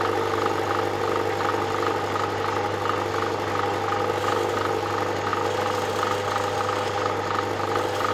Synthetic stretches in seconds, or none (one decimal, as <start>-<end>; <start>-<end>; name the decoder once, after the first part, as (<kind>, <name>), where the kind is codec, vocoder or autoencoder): none